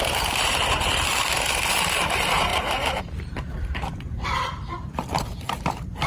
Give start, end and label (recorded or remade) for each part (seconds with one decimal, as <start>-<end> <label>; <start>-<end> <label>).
0.0-6.1 remade